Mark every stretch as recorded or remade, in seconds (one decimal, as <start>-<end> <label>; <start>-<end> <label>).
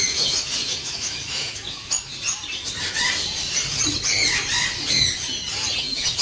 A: 0.0-2.1 remade; 2.1-5.8 recorded; 5.8-6.2 remade